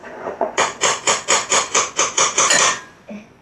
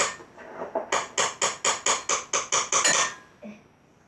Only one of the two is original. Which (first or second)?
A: second